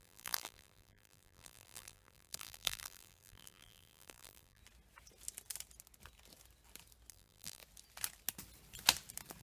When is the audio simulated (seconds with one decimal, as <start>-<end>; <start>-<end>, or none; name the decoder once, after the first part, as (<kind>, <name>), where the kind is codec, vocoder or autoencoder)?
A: 0.0-4.6 (vocoder, BigVGAN v2); 7.1-7.6